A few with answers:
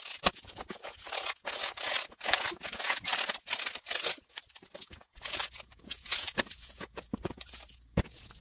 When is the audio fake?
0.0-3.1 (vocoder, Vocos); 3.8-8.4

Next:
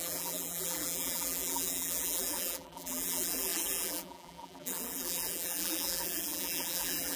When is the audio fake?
0.0-7.2 (vocoder, BigVGAN v2)

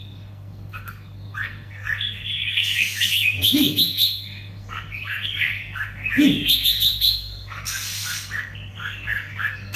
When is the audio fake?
0.0-9.8 (codec, SNAC)

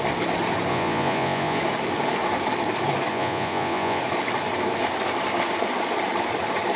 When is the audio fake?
0.7-1.6 (vocoder, Vocos); 3.1-4.0